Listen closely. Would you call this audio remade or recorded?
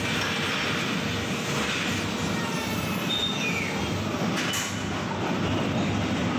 recorded